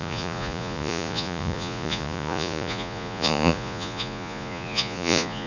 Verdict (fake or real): fake